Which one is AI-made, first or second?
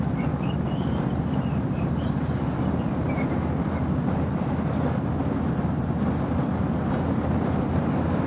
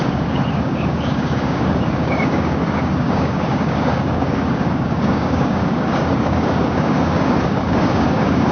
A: second